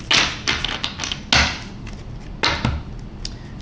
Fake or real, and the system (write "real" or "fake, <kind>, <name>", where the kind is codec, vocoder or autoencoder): real